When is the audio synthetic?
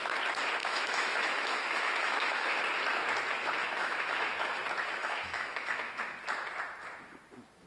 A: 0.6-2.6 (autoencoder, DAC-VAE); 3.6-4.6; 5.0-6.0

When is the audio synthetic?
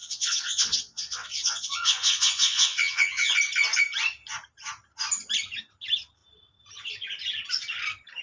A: 0.0-3.3 (vocoder, WaveNeXt)